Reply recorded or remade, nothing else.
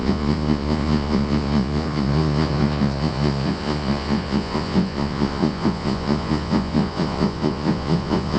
remade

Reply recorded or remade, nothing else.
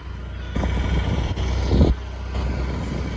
recorded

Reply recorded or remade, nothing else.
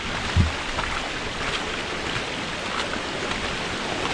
recorded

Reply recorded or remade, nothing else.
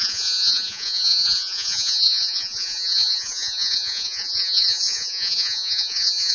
remade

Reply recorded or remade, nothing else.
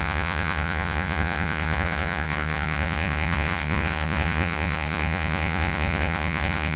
remade